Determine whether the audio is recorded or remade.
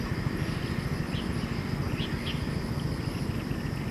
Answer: recorded